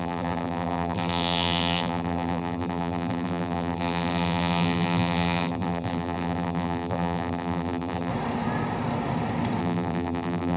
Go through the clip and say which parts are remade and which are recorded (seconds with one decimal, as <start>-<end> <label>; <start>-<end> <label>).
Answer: 0.0-8.1 remade; 8.1-9.6 recorded; 9.6-10.6 remade